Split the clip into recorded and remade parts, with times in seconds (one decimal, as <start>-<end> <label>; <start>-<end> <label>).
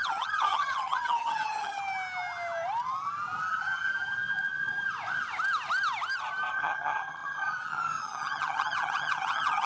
0.0-1.8 remade; 1.8-3.4 recorded; 3.4-3.9 remade; 3.9-6.5 recorded; 6.5-9.7 remade